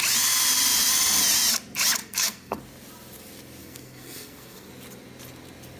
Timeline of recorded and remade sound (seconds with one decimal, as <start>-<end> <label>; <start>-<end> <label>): 0.0-2.0 recorded; 2.0-2.6 remade; 2.6-3.6 recorded; 3.6-4.7 remade; 4.7-5.8 recorded